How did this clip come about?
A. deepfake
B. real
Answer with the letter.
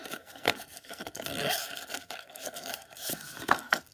A